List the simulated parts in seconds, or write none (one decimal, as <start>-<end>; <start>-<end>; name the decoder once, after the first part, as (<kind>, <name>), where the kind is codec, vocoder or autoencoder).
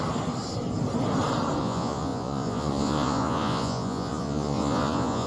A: 1.6-5.3 (vocoder, Vocos)